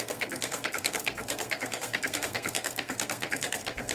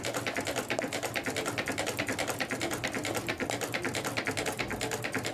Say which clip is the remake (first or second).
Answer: first